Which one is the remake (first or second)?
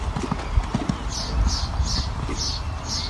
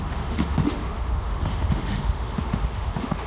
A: second